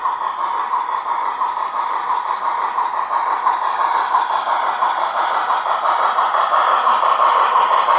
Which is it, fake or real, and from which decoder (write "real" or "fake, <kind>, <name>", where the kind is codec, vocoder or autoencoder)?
real